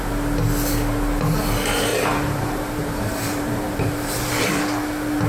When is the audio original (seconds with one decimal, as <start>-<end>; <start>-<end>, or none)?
0.0-1.9; 4.6-5.3